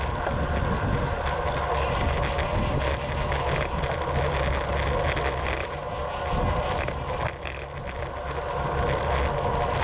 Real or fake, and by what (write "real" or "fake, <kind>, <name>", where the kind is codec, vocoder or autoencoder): real